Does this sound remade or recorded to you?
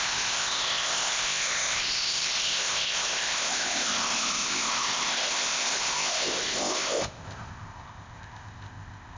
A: remade